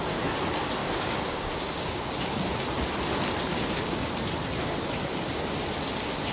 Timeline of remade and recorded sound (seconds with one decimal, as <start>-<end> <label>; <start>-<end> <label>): 0.0-0.8 recorded; 0.8-2.1 remade; 2.1-3.5 recorded; 3.5-4.1 remade; 4.1-6.3 recorded